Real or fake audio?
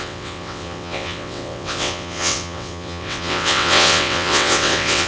fake